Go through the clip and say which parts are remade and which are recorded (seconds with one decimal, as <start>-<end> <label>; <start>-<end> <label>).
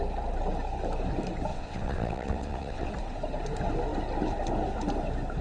0.0-1.5 recorded; 1.5-2.9 remade; 2.9-5.4 recorded